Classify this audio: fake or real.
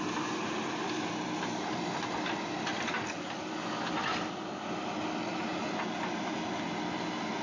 real